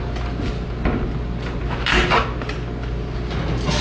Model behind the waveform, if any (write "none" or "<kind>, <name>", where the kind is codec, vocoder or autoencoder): none